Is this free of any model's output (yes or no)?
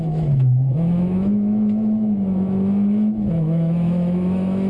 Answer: no